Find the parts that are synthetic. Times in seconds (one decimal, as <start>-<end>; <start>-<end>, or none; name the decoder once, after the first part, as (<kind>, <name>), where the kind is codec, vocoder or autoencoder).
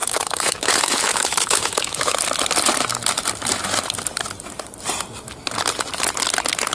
0.0-2.2 (autoencoder, DAC-VAE)